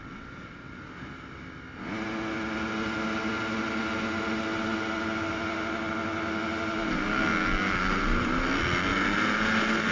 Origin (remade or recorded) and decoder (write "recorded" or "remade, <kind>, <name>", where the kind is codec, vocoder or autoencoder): recorded